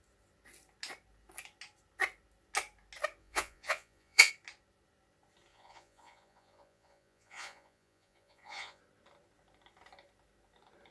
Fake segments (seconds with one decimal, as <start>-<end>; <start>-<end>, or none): 3.2-4.3; 5.5-8.8